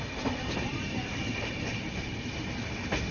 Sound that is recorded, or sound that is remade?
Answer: recorded